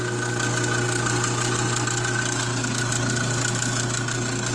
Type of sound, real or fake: real